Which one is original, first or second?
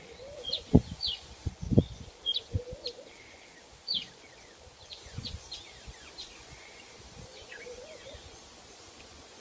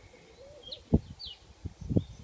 second